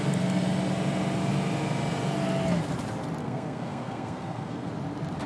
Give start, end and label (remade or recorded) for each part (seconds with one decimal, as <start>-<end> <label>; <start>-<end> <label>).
0.0-3.2 recorded; 3.2-4.7 remade; 4.7-5.3 recorded